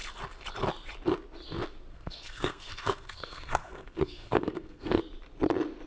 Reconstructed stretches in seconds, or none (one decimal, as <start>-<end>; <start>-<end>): 1.9-5.0